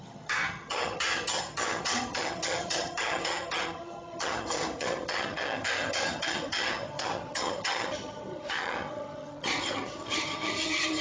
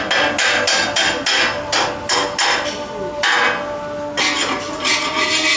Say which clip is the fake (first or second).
first